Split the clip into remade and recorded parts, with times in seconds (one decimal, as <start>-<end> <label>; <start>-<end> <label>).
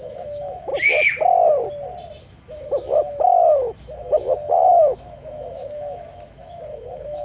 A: 0.0-0.7 remade; 0.7-2.2 recorded; 2.2-7.2 remade